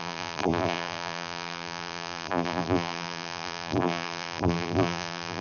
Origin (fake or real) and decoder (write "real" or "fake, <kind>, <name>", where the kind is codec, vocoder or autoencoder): fake, vocoder, BigVGAN v2